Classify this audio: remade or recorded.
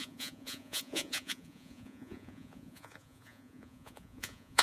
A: remade